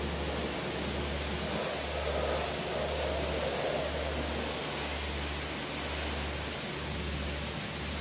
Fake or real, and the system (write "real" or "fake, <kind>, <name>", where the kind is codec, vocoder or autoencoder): real